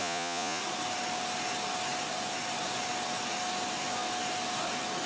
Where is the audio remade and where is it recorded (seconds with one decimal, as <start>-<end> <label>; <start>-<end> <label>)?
0.0-0.6 remade; 0.6-5.1 recorded